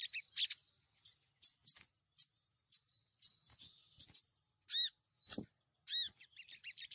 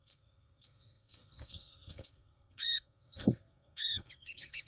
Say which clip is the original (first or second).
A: first